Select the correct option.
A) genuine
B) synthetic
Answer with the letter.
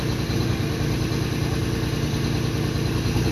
A